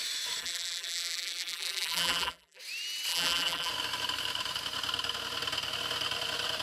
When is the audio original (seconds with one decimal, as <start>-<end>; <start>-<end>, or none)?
0.0-0.4; 2.6-3.1; 3.7-6.6